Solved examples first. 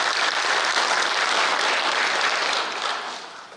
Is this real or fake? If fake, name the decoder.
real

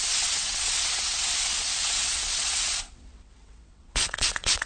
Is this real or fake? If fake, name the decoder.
fake, vocoder, WaveNeXt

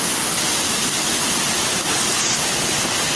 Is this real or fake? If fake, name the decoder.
real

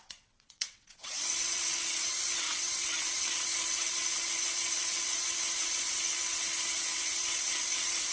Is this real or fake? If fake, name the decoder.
fake, vocoder, WaveNeXt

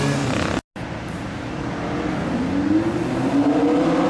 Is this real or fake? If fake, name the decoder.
real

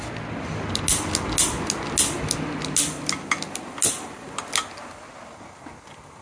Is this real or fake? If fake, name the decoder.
real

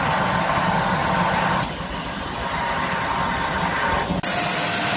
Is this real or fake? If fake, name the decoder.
real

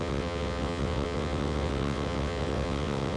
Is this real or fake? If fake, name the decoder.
fake, vocoder, WaveNeXt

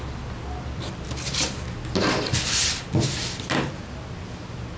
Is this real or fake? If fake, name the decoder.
real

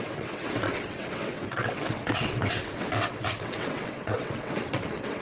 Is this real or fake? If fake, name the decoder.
fake, vocoder, WaveNeXt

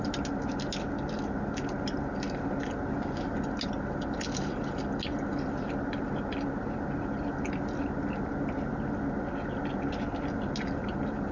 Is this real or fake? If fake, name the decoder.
real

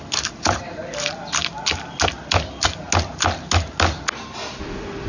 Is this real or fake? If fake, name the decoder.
real